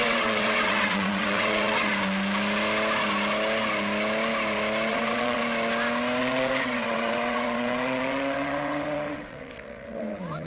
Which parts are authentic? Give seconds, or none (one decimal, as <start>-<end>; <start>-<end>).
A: 1.9-4.9; 5.4-6.2